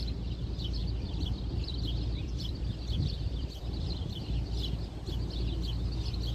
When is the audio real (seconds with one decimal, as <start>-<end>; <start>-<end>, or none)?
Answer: 0.0-0.8; 4.6-6.3